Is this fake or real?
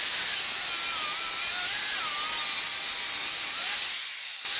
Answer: real